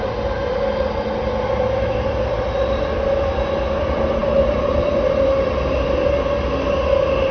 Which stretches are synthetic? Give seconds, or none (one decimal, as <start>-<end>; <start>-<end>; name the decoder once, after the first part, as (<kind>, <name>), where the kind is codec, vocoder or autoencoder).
4.2-4.7 (vocoder, BigVGAN v2)